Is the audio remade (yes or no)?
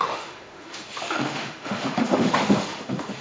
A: yes